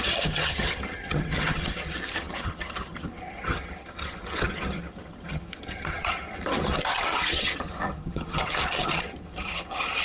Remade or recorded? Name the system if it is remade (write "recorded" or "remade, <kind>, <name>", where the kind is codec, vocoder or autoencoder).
remade, vocoder, HiFi-GAN